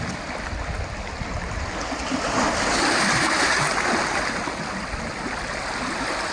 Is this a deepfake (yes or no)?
no